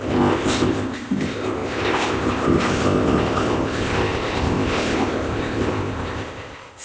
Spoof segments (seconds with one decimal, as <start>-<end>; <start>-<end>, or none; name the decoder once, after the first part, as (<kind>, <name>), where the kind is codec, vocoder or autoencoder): 0.0-6.8 (codec, ZipCodec)